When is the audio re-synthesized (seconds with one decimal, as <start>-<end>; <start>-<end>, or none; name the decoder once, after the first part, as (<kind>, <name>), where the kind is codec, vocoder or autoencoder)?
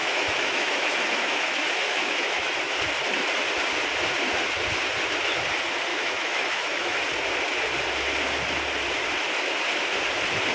0.0-2.5 (autoencoder, DAC-VAE); 5.9-7.0